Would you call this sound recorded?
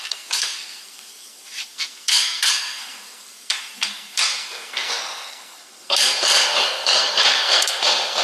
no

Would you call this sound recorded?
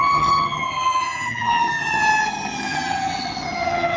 no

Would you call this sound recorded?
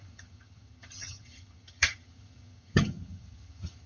no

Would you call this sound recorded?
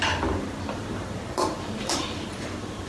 no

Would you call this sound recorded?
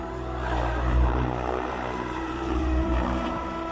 no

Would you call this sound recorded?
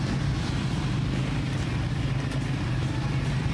yes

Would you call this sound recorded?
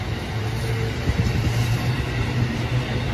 yes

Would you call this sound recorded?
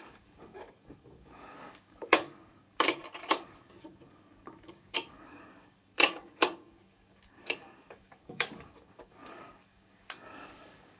no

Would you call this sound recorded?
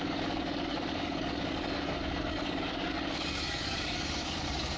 no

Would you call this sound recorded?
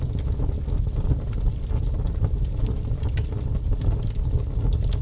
yes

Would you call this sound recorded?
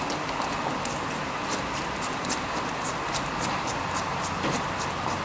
yes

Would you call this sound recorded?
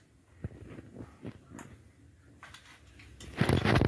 yes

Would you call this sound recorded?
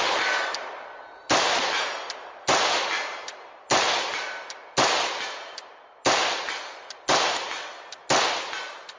yes